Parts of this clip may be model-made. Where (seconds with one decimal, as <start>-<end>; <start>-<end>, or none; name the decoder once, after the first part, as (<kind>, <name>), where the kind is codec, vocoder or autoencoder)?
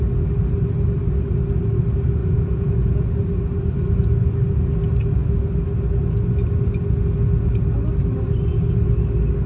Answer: 2.2-3.1 (vocoder, Vocos)